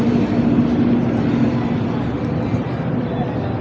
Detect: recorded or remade recorded